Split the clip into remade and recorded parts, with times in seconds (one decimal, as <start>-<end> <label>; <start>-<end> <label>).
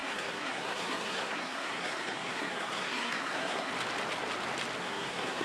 0.0-3.7 remade; 3.7-4.8 recorded; 4.8-5.4 remade